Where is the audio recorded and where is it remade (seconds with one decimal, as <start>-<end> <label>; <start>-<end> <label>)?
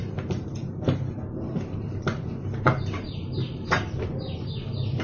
0.0-5.0 recorded